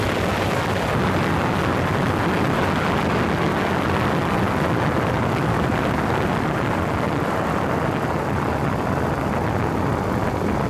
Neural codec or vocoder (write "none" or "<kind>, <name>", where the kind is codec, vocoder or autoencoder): none